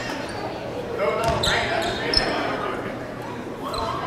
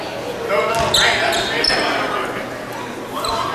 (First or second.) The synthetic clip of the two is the first